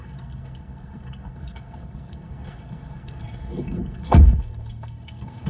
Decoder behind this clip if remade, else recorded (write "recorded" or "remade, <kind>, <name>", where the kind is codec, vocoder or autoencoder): remade, codec, SNAC